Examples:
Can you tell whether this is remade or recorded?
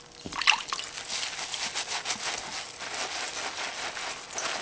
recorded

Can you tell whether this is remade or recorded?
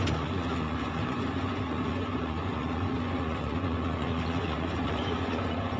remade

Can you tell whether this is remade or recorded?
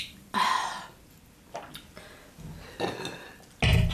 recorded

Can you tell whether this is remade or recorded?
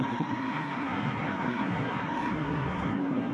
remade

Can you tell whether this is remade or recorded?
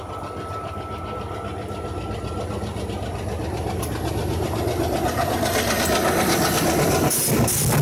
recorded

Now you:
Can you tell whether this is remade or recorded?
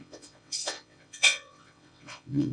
remade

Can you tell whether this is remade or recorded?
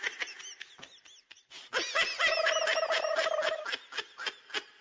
recorded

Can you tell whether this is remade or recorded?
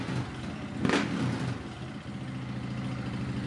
recorded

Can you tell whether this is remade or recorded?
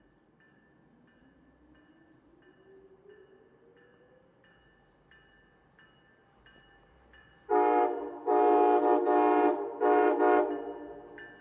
recorded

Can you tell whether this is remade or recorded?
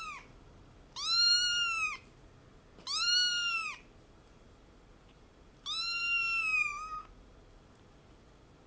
recorded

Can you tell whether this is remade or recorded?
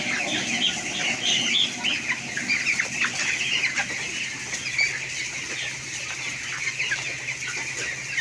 recorded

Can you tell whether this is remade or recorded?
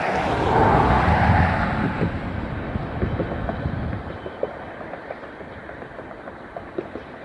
recorded